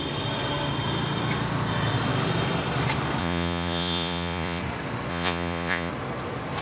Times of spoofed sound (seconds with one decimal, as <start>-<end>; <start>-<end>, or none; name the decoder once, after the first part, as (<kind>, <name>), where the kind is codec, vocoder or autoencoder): 3.2-4.6 (vocoder, Vocos); 5.1-5.9